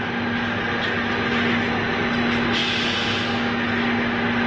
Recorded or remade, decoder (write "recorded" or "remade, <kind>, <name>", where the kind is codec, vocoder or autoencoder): recorded